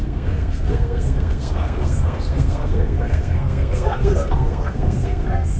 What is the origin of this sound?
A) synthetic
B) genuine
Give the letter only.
A